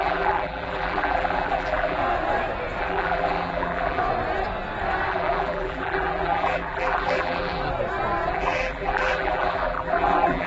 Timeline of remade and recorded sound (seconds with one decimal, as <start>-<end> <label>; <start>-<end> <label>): 0.0-2.0 remade; 2.0-2.8 recorded; 2.8-4.0 remade; 4.0-5.1 recorded; 5.1-7.6 remade; 7.6-8.3 recorded; 8.3-10.5 remade